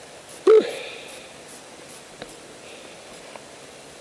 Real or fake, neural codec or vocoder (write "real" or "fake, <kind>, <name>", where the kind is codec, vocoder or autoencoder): real